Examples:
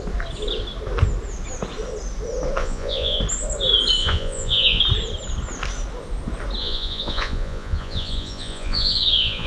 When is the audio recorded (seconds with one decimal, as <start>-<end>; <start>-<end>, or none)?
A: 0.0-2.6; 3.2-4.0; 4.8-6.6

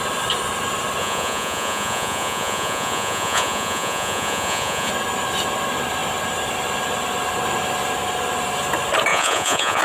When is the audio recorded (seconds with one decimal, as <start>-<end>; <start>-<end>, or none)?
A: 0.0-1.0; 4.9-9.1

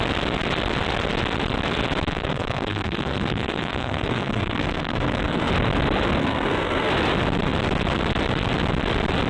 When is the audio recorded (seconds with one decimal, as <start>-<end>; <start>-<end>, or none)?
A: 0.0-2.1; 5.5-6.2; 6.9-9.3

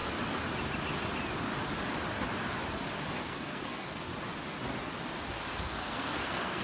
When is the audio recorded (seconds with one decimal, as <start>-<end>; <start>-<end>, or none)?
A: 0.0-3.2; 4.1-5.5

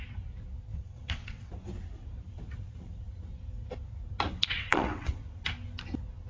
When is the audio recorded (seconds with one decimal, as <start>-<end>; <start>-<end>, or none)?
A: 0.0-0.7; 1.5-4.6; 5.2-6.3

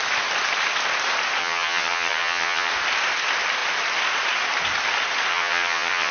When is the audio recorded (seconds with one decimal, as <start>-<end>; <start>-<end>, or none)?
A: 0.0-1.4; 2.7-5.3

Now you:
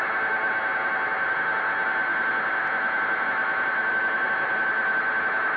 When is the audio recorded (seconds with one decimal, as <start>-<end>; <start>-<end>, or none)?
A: 0.0-5.6

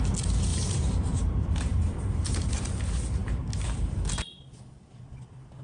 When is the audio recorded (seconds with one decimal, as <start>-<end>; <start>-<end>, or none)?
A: 0.0-0.5; 2.5-5.6